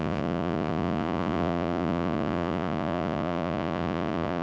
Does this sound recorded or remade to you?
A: remade